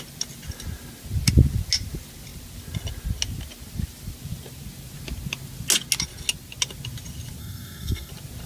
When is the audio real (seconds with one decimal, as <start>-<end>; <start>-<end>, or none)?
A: 0.0-7.4; 8.1-8.5